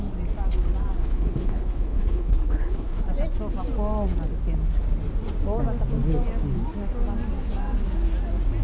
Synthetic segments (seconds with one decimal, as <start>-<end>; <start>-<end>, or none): 1.0-3.0